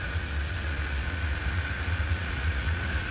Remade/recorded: remade